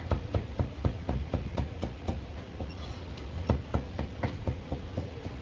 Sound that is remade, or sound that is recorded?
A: remade